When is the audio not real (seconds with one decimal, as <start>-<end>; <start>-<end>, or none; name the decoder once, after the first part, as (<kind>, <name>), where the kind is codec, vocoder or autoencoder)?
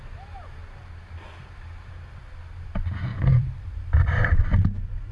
3.1-3.7 (vocoder, BigVGAN v2)